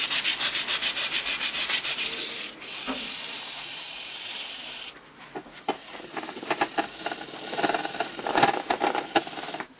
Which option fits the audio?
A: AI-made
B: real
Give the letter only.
A